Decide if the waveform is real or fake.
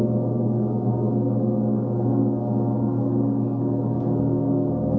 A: fake